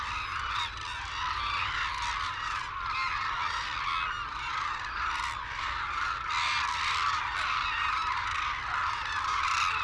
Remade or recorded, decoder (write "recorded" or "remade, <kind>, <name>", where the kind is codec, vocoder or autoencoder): recorded